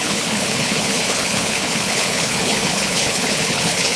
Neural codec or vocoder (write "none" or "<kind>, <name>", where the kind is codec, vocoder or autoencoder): codec, HILCodec